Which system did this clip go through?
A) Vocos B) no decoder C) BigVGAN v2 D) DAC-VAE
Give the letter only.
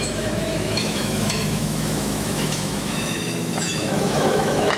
D